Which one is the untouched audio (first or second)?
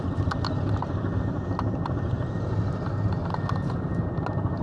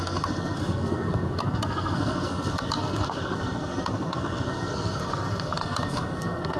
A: first